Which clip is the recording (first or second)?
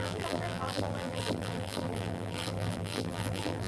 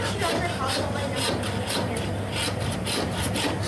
second